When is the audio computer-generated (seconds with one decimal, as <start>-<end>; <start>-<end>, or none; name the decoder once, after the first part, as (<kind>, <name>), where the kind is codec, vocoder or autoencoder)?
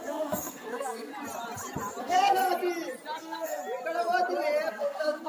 0.0-1.1 (codec, SNAC); 2.0-2.4; 3.2-3.6; 4.7-5.3